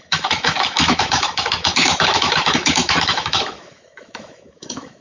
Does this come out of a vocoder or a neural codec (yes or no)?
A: yes